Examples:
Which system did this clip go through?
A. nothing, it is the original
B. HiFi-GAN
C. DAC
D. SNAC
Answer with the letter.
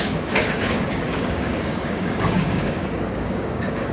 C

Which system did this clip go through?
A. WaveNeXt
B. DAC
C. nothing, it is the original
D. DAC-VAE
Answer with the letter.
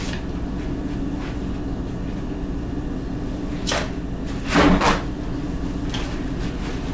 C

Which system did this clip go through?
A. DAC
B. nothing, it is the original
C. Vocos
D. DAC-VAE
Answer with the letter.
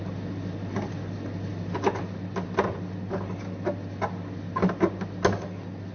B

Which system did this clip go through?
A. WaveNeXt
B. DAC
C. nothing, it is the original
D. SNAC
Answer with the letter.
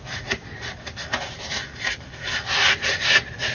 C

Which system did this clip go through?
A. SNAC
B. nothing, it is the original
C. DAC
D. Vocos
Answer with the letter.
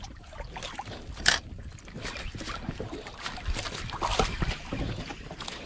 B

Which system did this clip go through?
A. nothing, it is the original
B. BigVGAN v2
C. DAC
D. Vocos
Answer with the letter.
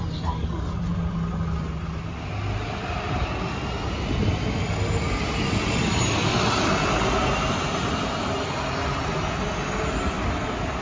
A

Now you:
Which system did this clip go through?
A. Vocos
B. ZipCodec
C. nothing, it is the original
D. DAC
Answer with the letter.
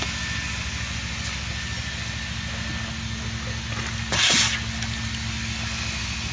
C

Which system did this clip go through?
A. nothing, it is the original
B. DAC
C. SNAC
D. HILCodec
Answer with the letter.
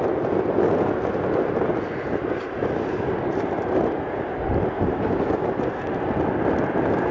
A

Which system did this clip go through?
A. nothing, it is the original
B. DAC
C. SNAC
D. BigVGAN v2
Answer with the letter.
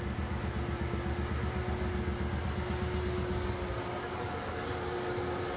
A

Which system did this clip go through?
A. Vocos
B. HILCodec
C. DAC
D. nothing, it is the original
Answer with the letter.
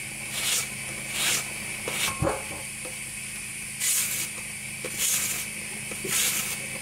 D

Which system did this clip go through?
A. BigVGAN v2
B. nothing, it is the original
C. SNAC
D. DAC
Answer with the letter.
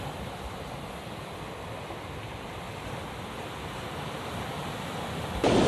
B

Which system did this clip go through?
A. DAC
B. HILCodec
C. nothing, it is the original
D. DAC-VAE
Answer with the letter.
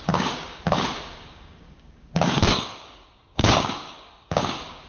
A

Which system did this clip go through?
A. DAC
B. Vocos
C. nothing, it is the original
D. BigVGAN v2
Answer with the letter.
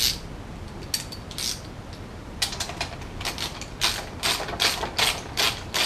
C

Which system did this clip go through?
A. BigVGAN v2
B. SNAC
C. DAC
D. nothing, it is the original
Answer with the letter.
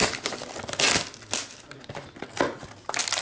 D